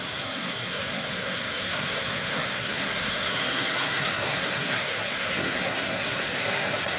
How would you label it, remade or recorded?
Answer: remade